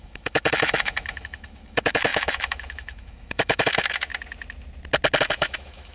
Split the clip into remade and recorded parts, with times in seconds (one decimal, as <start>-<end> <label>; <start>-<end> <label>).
0.0-4.1 remade; 4.1-5.2 recorded; 5.2-5.9 remade